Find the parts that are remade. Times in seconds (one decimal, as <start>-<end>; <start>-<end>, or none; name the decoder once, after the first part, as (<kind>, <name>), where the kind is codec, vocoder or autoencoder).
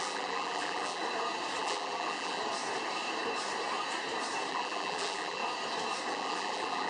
0.0-1.0 (vocoder, BigVGAN v2); 1.6-2.4; 4.5-5.4; 6.1-6.9